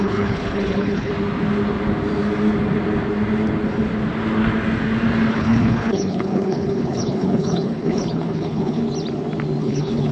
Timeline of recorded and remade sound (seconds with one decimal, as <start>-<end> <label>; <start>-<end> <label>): 0.0-1.1 remade; 1.1-5.3 recorded; 5.3-8.8 remade; 8.8-9.6 recorded; 9.6-10.1 remade